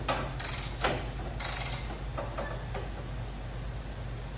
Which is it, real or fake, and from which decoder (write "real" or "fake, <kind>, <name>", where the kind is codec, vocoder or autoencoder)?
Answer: real